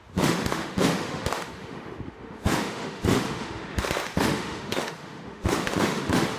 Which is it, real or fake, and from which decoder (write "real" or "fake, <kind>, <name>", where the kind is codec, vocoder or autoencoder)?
fake, autoencoder, DAC-VAE